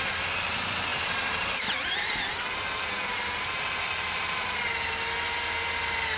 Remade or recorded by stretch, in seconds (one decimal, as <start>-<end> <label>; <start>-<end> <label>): 0.0-0.9 recorded; 0.9-4.6 remade; 4.6-6.2 recorded